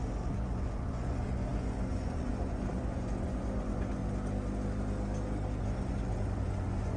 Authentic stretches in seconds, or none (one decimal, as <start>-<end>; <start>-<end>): 4.0-5.6